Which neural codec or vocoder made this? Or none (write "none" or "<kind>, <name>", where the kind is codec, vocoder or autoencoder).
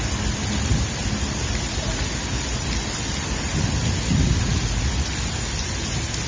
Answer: none